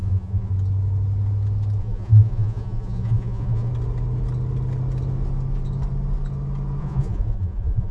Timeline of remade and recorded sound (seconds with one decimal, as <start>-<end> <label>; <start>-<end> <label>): 0.0-0.5 remade; 0.5-1.8 recorded; 1.8-3.7 remade; 3.7-6.8 recorded; 6.8-7.9 remade